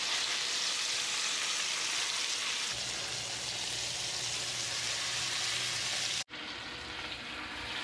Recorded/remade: recorded